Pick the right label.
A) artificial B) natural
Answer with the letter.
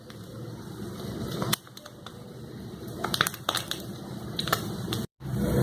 A